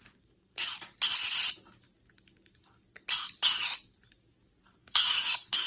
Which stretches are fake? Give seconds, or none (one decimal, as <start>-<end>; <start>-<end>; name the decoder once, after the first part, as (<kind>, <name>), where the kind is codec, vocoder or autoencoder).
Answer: 4.8-5.7 (codec, DAC)